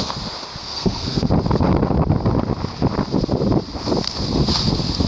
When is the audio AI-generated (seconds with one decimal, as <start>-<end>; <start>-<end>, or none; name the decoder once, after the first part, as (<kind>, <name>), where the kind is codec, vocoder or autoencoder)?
0.6-1.3 (codec, SNAC)